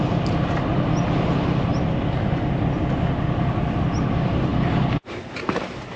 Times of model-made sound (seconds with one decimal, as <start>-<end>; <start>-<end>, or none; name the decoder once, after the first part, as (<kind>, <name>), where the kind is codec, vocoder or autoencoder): none